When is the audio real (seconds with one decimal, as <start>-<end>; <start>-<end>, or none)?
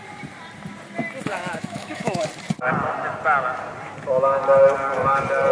0.0-1.3; 2.2-5.5